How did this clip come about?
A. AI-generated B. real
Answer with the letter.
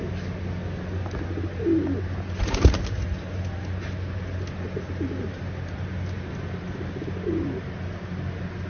B